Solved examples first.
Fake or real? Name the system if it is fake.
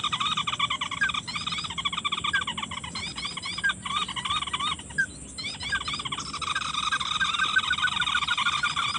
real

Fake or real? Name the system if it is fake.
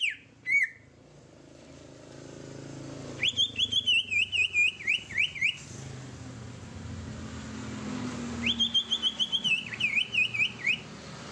real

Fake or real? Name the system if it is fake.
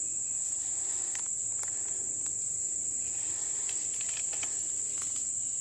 real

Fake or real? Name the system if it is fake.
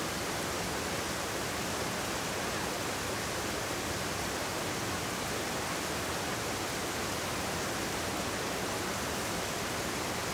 real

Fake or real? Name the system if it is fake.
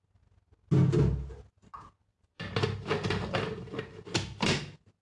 real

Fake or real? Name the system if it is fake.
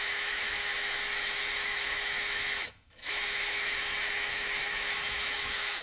fake, autoencoder, DAC-VAE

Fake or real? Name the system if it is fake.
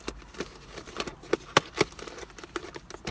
real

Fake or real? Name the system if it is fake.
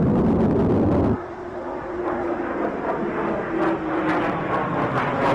real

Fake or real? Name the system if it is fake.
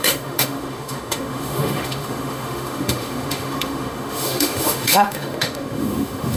fake, autoencoder, DAC-VAE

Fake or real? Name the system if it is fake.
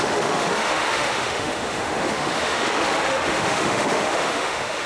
fake, autoencoder, DAC-VAE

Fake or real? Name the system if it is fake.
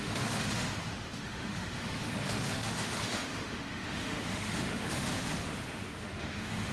fake, autoencoder, DAC-VAE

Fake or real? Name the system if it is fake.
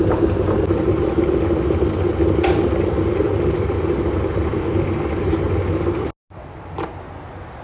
real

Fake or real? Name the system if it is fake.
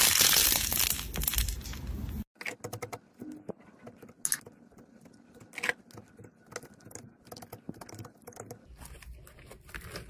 real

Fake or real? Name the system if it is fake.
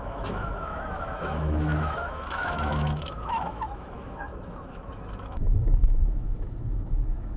fake, autoencoder, DAC-VAE